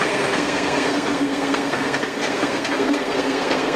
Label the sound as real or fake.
fake